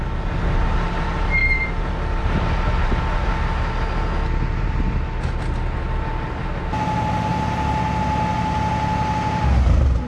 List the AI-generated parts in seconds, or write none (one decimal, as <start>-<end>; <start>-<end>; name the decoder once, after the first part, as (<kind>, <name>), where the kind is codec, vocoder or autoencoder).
none